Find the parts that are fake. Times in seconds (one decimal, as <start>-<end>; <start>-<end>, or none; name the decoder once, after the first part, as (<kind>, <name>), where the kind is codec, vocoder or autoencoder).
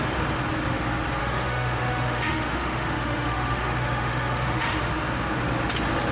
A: 1.2-4.9 (autoencoder, DAC-VAE)